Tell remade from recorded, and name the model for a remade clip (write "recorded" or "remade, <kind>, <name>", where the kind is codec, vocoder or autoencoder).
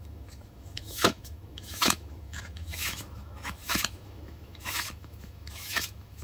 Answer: remade, autoencoder, DAC-VAE